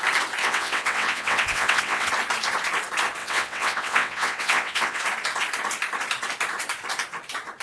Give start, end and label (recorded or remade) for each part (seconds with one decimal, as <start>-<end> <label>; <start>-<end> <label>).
0.0-0.4 recorded; 0.4-2.1 remade; 2.1-3.2 recorded; 3.2-5.0 remade; 5.0-7.6 recorded